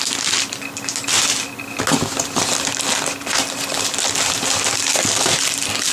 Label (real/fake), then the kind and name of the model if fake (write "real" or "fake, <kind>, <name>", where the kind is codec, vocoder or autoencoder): real